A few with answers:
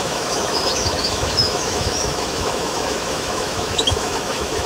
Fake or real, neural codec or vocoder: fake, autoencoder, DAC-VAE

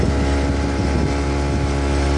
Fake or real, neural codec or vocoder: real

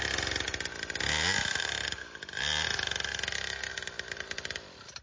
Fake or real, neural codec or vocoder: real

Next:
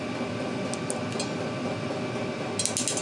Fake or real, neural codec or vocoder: real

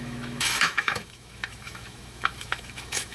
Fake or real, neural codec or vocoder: fake, autoencoder, DAC-VAE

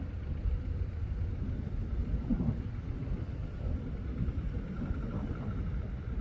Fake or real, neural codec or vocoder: real